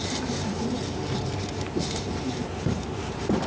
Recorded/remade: remade